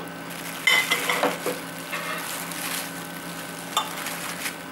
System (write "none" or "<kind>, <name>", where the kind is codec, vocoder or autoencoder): none